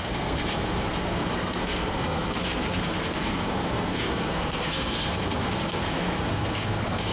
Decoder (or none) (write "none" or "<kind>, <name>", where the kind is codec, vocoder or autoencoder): codec, SNAC